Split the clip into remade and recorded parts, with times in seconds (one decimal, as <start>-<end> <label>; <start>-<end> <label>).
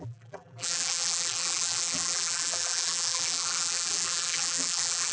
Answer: 0.0-5.1 remade